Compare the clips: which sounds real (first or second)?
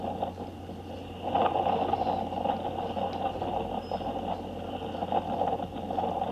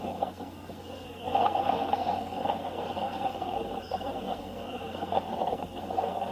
first